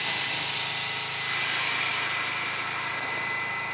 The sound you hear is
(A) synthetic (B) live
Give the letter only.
B